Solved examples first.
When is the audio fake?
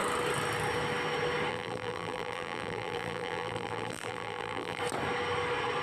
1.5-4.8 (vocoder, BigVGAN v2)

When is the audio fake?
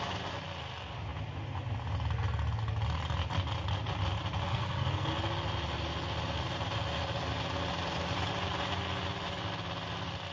4.5-5.1 (codec, SNAC)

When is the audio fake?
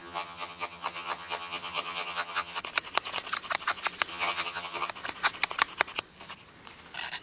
0.0-2.6 (vocoder, HiFi-GAN); 4.1-4.9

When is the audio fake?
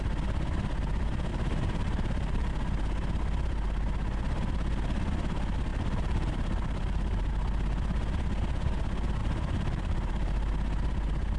1.3-2.5 (vocoder, BigVGAN v2); 5.7-7.3; 9.2-10.3